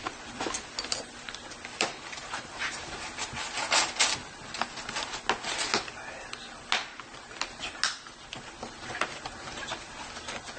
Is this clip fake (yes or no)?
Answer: no